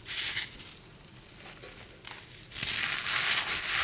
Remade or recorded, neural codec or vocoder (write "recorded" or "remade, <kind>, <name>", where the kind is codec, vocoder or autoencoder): recorded